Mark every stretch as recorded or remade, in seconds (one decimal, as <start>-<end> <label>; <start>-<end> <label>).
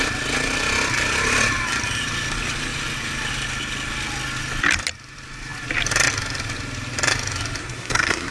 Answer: 0.0-7.6 recorded; 7.6-8.3 remade